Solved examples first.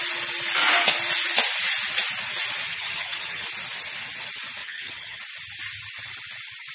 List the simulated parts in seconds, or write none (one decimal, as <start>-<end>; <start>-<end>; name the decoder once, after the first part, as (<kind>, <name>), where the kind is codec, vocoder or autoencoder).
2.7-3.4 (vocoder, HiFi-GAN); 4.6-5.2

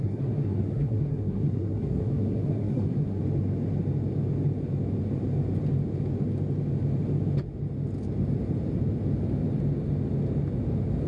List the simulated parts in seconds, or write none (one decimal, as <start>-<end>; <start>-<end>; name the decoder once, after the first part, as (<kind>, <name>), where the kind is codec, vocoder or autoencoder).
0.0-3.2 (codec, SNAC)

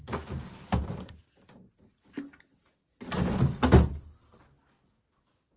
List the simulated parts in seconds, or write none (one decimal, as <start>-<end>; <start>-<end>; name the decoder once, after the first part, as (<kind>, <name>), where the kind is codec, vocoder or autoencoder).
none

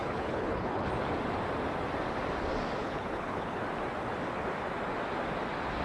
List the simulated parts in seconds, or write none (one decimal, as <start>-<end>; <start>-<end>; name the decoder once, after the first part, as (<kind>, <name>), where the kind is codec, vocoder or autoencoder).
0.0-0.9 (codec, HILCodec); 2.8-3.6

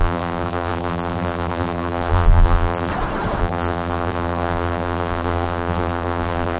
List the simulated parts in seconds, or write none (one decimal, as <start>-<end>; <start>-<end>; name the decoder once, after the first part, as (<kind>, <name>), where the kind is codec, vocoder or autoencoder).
0.0-2.9 (vocoder, BigVGAN v2); 3.4-6.6

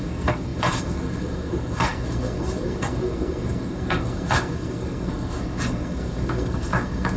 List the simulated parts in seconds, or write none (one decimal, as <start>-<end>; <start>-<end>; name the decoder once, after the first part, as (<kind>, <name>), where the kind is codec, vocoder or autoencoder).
0.0-7.2 (codec, SNAC)

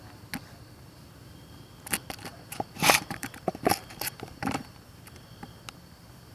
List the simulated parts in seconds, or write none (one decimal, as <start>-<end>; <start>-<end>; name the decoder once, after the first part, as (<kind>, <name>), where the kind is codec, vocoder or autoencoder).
2.3-5.0 (vocoder, BigVGAN v2)